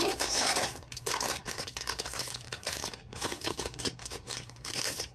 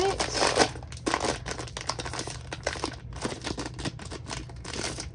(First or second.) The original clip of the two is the second